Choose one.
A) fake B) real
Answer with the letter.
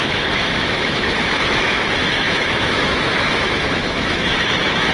A